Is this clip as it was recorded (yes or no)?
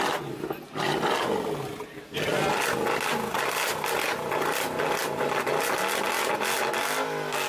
yes